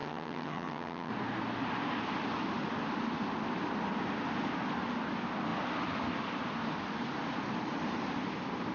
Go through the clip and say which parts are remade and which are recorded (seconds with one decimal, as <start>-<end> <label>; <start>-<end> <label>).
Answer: 0.0-1.1 remade; 1.1-8.7 recorded